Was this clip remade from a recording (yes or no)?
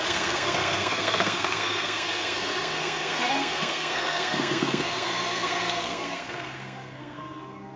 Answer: yes